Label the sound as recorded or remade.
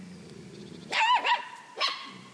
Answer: recorded